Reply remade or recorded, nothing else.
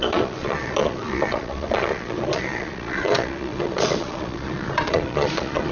remade